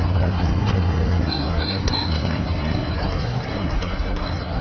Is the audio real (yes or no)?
no